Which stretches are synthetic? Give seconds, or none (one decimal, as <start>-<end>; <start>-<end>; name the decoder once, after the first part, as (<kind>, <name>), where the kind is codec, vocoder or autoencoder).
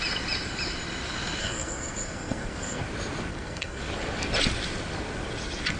1.4-2.8 (codec, SNAC); 3.3-3.8